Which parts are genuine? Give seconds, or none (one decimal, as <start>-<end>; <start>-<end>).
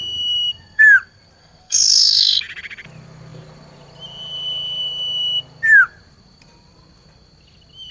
0.0-1.4; 2.4-7.9